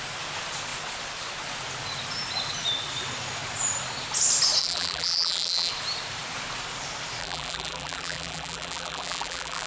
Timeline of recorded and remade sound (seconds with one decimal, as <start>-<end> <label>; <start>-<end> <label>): 0.0-4.6 recorded; 4.6-5.7 remade; 5.7-7.2 recorded; 7.2-9.7 remade